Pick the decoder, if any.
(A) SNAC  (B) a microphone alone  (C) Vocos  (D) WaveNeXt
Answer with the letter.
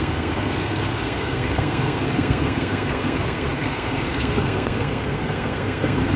A